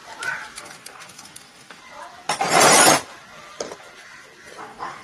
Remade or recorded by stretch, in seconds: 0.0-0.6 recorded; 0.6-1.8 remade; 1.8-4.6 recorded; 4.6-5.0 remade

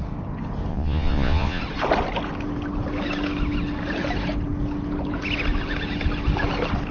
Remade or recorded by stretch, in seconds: 0.0-0.7 recorded; 0.7-1.6 remade; 1.6-6.9 recorded

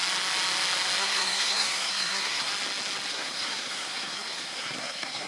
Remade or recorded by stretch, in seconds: 0.0-1.0 recorded; 1.0-2.5 remade; 2.5-3.1 recorded; 3.1-5.3 remade

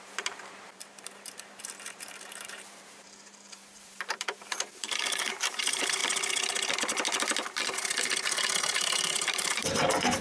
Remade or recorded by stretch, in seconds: 0.0-6.0 remade; 6.0-8.6 recorded; 8.6-10.2 remade

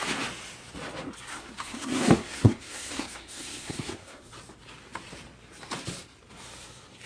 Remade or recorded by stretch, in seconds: 0.0-1.3 recorded; 1.3-4.3 remade; 4.3-7.1 recorded

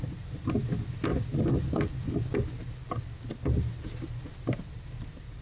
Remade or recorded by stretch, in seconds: 0.0-5.4 recorded

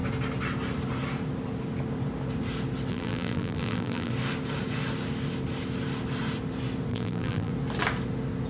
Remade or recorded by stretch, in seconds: 0.0-2.9 recorded; 2.9-4.1 remade; 4.1-6.9 recorded; 6.9-7.5 remade; 7.5-8.5 recorded

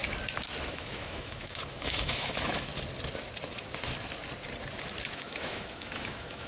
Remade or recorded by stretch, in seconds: 0.0-0.7 recorded; 0.7-2.7 remade; 2.7-5.0 recorded; 5.0-6.5 remade